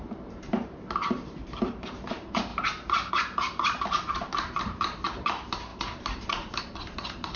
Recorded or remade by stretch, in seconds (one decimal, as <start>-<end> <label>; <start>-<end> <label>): 0.0-7.4 remade